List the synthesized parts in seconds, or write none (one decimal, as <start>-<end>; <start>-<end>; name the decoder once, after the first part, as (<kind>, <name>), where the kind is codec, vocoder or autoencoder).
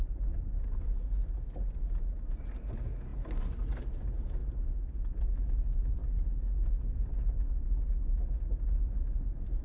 none